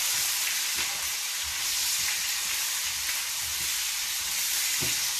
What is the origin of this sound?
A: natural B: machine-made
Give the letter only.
A